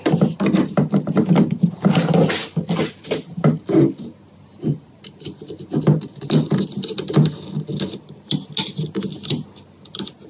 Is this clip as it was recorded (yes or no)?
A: yes